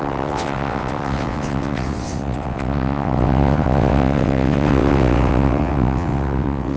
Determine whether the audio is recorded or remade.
remade